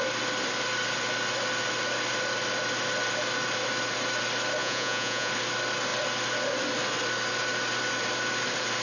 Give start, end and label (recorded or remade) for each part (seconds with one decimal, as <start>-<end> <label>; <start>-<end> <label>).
0.0-4.6 recorded; 4.6-5.3 remade; 5.3-8.8 recorded